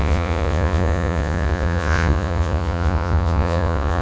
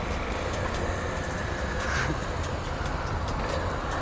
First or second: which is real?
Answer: second